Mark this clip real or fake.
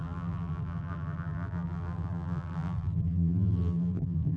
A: fake